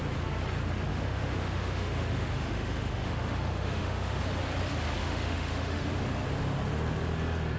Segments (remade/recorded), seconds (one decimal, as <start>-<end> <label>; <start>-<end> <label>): 0.0-0.9 recorded; 0.9-4.2 remade; 4.2-5.0 recorded; 5.0-5.9 remade; 5.9-7.6 recorded